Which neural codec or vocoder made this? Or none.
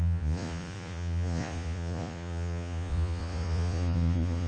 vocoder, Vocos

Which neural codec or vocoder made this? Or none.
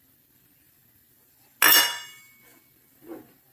none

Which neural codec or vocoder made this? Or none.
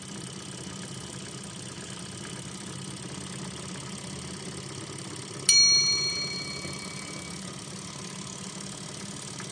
none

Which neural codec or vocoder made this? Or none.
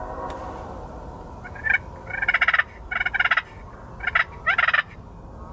none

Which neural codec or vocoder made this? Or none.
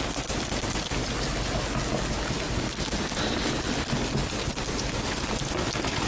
none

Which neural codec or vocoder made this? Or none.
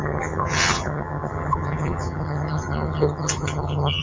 vocoder, HiFi-GAN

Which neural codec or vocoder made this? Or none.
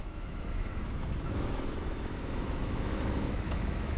autoencoder, DAC-VAE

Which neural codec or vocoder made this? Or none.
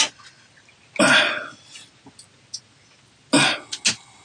none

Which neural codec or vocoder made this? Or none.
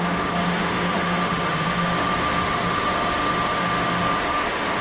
autoencoder, DAC-VAE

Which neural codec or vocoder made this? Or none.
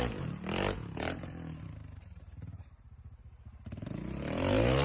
none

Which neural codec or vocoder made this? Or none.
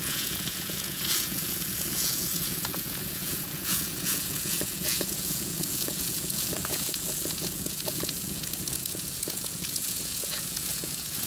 vocoder, Vocos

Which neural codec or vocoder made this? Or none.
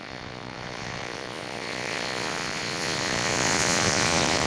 vocoder, Vocos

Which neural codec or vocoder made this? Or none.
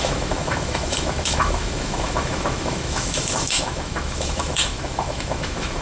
autoencoder, DAC-VAE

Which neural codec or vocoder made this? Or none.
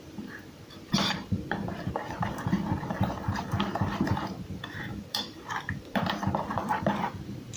vocoder, BigVGAN v2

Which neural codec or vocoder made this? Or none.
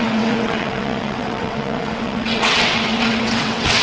vocoder, WaveNeXt